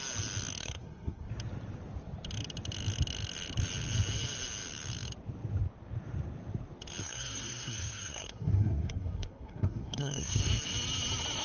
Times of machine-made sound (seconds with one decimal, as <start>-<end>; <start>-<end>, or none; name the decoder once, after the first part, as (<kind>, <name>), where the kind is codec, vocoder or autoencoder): 0.6-1.3 (codec, SNAC); 7.0-10.4